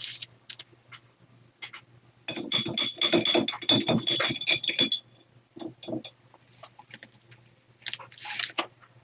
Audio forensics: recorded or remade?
recorded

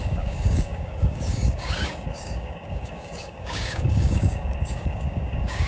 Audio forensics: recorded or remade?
remade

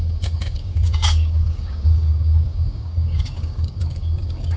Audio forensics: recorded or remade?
remade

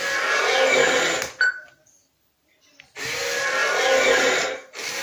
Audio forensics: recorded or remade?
recorded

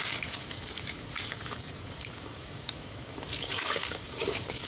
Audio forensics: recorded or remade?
remade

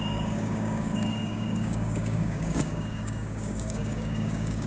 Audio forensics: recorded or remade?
remade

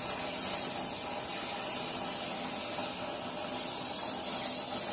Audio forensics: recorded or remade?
recorded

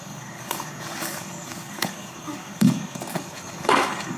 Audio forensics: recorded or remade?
remade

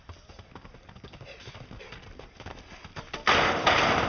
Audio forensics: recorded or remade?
recorded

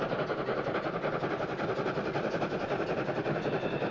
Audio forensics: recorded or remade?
recorded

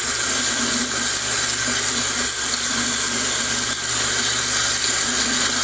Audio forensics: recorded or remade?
recorded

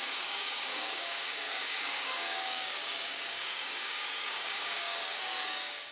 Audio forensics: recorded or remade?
remade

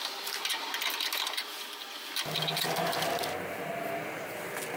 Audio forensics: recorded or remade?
recorded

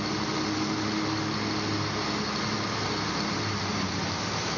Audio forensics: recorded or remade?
recorded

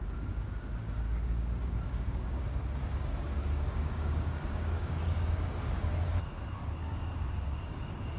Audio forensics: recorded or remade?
remade